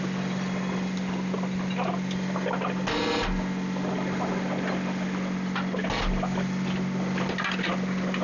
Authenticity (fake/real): real